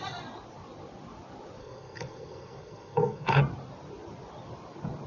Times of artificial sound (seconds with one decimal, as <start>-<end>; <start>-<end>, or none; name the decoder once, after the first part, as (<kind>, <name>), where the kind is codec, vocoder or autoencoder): 1.6-3.4 (codec, SNAC)